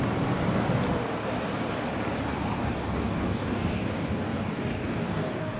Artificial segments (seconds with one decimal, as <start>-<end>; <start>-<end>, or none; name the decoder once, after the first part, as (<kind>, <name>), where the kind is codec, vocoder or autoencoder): 2.6-5.6 (codec, DAC)